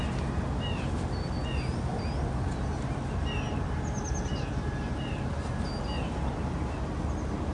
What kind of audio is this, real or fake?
real